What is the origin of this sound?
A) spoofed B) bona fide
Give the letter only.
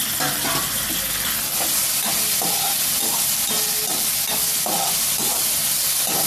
B